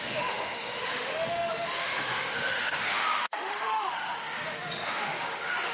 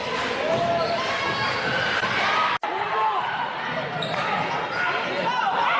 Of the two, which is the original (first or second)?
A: second